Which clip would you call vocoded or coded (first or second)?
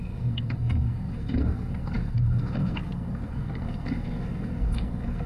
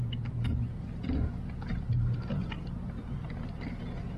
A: first